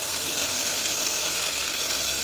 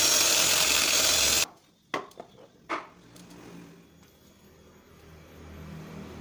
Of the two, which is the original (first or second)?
second